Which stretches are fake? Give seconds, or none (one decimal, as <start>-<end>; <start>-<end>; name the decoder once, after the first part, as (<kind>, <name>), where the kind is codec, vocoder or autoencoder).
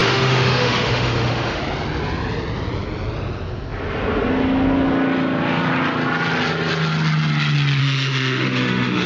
0.0-1.6 (autoencoder, DAC-VAE); 7.8-9.1